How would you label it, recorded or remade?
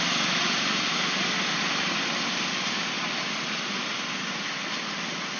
recorded